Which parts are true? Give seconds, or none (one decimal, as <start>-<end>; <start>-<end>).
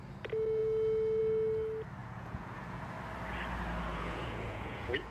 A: 0.0-2.0; 2.8-3.9